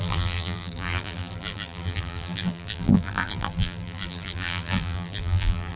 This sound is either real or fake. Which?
fake